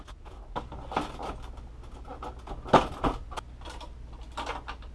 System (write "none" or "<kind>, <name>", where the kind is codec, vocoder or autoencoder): none